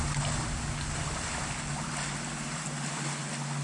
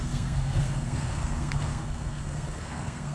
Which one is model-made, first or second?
second